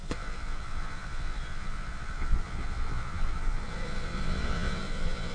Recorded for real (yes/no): no